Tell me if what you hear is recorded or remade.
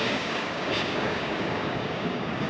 remade